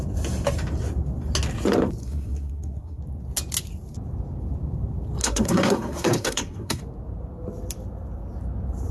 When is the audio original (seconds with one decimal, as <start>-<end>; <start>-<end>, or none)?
0.0-2.0; 3.0-5.2; 6.8-8.9